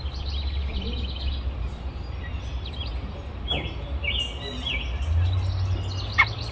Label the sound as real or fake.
real